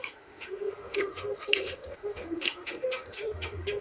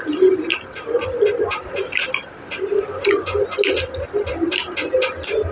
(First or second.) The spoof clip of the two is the first